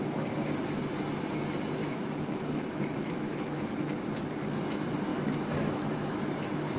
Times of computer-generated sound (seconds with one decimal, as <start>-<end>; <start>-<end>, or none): 1.8-3.6; 5.1-6.2